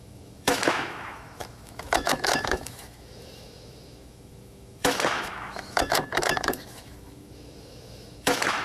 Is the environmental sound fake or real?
fake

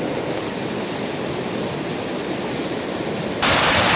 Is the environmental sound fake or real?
real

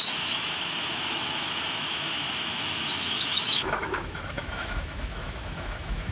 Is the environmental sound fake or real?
fake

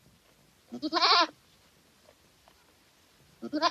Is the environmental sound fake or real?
real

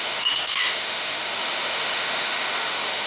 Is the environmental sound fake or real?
fake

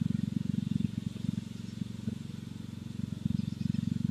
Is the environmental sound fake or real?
real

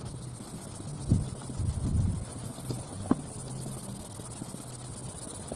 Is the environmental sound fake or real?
real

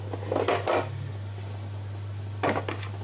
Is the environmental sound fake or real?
real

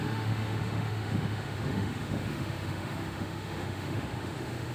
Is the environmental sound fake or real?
fake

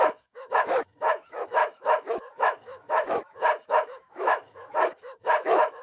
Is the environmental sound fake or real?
fake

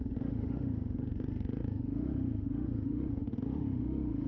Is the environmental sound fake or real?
fake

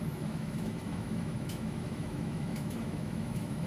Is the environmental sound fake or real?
fake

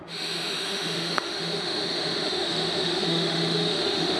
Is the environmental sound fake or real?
fake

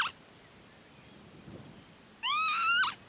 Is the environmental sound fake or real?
real